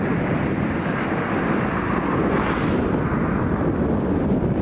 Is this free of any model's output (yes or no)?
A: yes